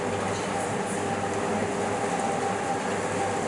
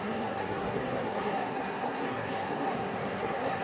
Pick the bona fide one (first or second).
first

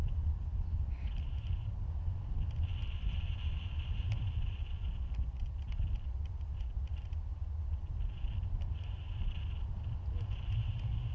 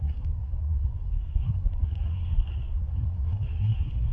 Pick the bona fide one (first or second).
first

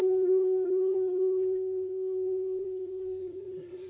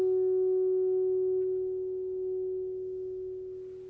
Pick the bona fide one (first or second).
second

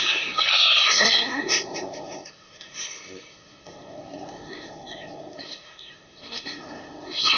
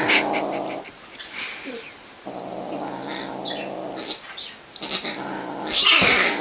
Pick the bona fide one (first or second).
second